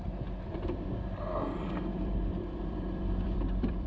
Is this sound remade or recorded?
remade